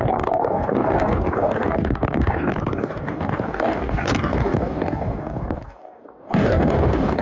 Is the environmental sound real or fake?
fake